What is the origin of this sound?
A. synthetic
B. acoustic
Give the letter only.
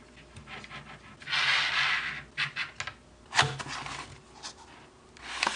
B